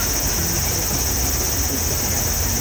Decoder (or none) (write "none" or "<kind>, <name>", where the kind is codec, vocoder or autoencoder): none